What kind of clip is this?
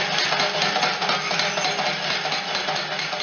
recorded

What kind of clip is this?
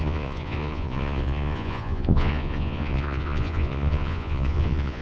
remade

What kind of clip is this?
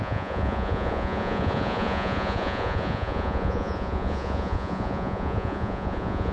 remade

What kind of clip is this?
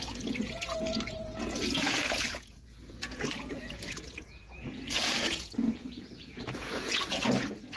remade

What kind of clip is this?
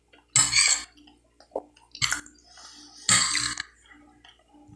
recorded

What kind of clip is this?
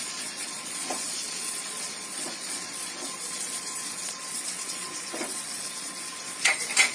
remade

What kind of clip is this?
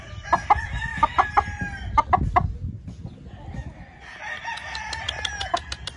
recorded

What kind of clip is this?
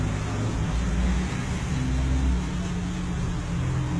recorded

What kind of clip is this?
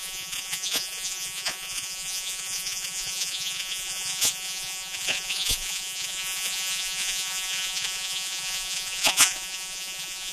remade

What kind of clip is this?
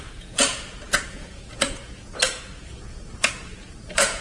remade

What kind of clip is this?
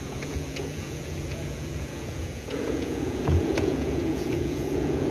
remade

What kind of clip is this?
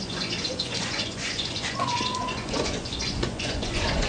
remade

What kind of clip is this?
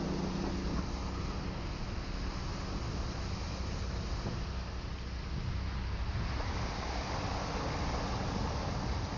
recorded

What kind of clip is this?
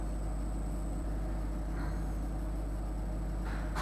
recorded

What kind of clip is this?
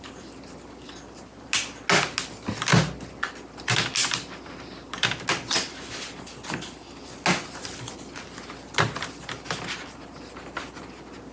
recorded